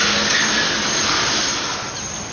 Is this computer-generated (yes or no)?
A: no